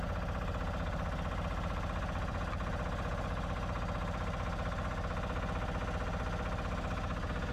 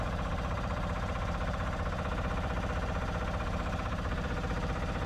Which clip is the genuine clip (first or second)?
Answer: first